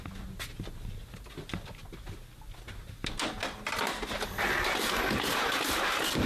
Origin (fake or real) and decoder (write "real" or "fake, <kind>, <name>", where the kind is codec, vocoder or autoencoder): real